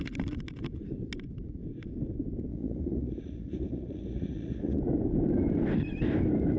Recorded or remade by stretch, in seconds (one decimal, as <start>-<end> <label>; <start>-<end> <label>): 0.0-2.5 recorded; 2.5-4.8 remade; 4.8-6.6 recorded